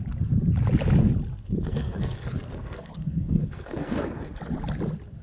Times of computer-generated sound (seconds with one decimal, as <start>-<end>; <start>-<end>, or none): 1.3-4.3